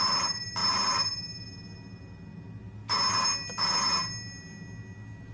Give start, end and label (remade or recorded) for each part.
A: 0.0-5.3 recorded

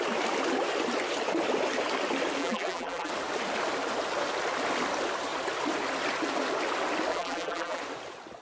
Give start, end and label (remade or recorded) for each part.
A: 0.0-2.4 recorded; 2.4-3.1 remade; 3.1-7.1 recorded; 7.1-7.8 remade; 7.8-8.4 recorded

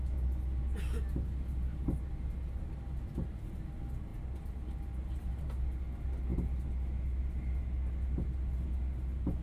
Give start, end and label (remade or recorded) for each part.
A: 0.0-9.4 recorded

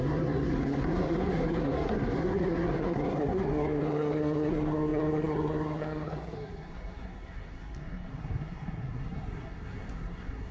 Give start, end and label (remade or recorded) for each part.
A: 0.0-10.5 remade

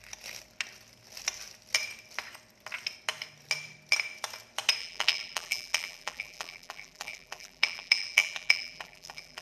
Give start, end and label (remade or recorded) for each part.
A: 0.0-4.8 recorded; 4.8-9.4 remade

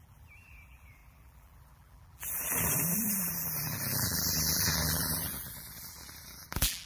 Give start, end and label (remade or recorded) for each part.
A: 0.0-6.9 remade

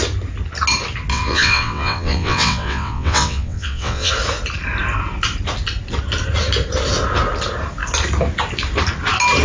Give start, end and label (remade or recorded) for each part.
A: 0.0-1.1 recorded; 1.1-4.1 remade; 4.1-9.4 recorded